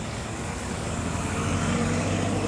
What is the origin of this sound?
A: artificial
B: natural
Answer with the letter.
A